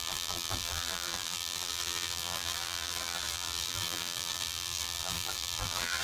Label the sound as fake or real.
fake